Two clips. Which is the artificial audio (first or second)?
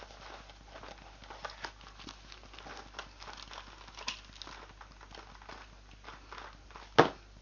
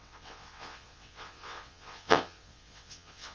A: second